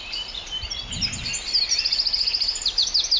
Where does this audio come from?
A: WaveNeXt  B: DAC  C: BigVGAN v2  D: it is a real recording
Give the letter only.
D